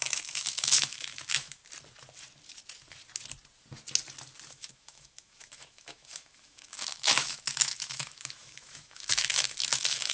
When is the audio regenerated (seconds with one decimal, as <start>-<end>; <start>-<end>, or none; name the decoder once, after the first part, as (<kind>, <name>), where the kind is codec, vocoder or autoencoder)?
0.0-1.6 (autoencoder, DAC-VAE); 4.5-10.1